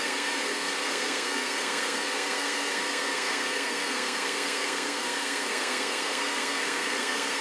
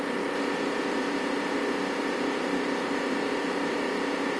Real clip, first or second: second